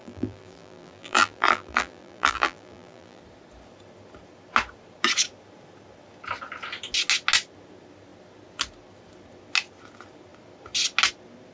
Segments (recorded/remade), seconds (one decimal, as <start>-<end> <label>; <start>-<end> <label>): 0.0-3.2 remade; 3.2-11.5 recorded